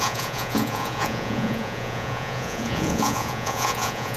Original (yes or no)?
no